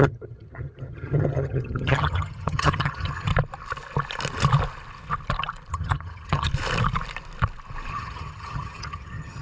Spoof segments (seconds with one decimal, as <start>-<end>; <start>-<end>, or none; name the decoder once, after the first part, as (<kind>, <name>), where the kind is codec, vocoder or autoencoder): 0.0-3.3 (vocoder, HiFi-GAN); 5.7-6.5; 7.9-9.4